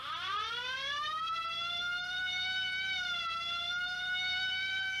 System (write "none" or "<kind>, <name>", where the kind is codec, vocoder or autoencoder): vocoder, BigVGAN v2